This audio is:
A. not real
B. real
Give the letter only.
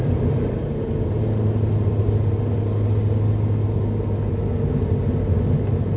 B